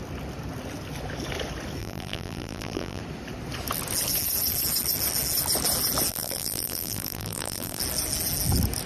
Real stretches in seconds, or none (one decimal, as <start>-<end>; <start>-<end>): 0.0-1.8; 3.0-6.1; 7.8-8.9